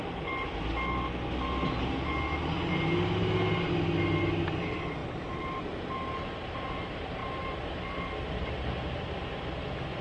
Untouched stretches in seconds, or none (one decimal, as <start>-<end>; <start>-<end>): 0.0-10.0

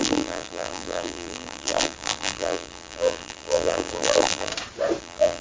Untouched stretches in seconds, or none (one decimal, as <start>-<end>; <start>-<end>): 4.5-5.0

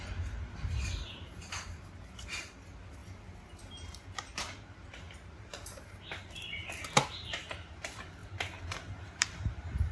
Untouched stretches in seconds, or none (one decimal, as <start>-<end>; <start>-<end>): 3.0-3.7; 8.2-9.0

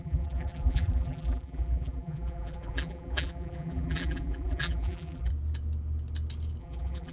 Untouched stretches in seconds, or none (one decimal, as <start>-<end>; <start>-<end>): 5.3-6.6

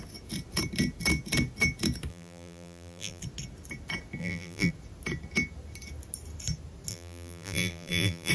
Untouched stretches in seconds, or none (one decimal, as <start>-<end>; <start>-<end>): 0.0-2.1; 3.2-4.2; 4.7-6.9

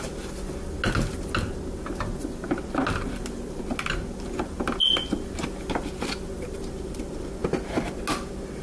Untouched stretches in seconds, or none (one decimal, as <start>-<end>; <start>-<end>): 0.0-8.6

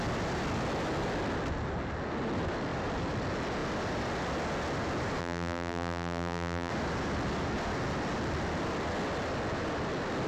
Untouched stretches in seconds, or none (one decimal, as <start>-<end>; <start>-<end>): 0.0-5.2; 6.7-10.3

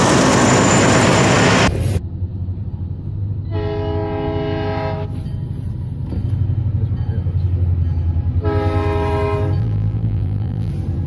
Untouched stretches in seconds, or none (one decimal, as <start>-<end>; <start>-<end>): 0.0-9.6; 10.7-11.1